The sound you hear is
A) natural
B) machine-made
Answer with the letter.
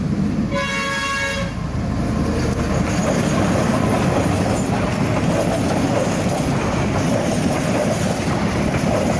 A